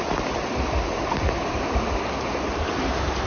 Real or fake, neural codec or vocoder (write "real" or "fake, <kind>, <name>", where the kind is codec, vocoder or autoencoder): real